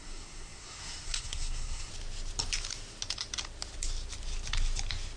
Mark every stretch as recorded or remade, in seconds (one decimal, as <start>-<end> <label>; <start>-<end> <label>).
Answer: 0.0-1.9 remade; 1.9-5.2 recorded

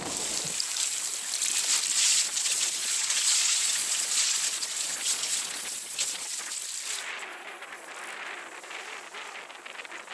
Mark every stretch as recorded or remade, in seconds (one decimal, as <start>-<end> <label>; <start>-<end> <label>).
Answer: 0.0-1.9 recorded; 1.9-6.5 remade; 6.5-7.3 recorded; 7.3-7.9 remade; 7.9-10.1 recorded

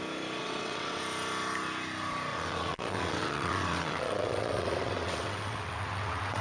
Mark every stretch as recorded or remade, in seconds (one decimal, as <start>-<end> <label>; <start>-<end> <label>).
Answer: 0.0-0.4 recorded; 0.4-1.0 remade; 1.0-2.3 recorded; 2.3-6.4 remade

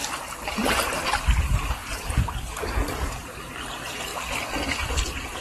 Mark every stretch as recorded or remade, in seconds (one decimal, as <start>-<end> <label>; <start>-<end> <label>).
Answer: 0.0-0.5 recorded; 0.5-4.1 remade; 4.1-4.8 recorded; 4.8-5.4 remade

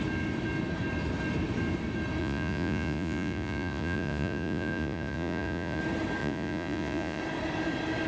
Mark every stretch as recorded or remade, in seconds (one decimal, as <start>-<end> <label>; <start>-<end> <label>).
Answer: 0.0-2.2 recorded; 2.2-5.8 remade; 5.8-6.2 recorded; 6.2-7.2 remade; 7.2-8.1 recorded

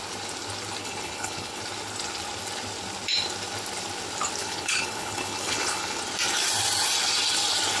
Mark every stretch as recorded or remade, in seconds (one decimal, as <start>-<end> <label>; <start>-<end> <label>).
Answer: 0.0-0.8 recorded; 0.8-1.6 remade; 1.6-4.4 recorded; 4.4-6.0 remade; 6.0-7.8 recorded

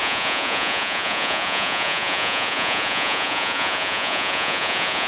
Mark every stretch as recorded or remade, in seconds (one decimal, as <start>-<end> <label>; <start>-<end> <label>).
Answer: 0.0-5.1 remade